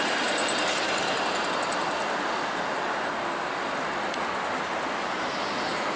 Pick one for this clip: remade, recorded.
recorded